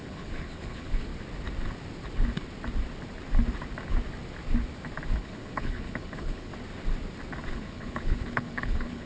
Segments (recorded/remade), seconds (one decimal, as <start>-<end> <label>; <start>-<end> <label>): 0.0-1.1 remade; 1.1-5.2 recorded; 5.2-6.5 remade; 6.5-7.5 recorded; 7.5-9.1 remade